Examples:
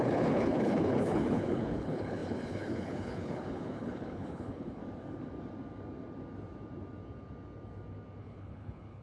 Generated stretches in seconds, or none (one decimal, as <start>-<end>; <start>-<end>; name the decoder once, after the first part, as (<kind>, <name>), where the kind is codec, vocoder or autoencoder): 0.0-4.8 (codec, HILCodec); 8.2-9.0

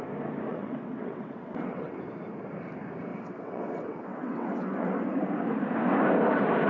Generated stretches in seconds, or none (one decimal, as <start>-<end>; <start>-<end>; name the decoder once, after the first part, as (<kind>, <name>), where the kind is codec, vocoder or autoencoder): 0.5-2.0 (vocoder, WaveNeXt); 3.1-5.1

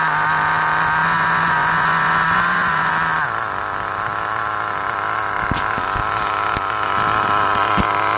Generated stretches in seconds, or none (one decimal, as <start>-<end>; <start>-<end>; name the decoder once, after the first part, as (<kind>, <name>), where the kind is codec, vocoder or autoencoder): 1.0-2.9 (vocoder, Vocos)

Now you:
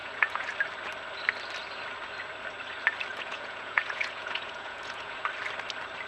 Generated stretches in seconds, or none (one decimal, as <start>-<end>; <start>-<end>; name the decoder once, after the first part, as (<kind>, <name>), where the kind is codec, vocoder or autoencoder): 0.0-0.5 (vocoder, Vocos); 3.1-5.2